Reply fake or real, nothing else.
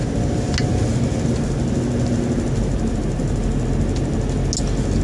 real